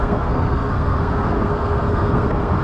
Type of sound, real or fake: fake